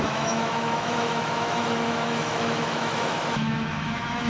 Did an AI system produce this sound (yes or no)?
yes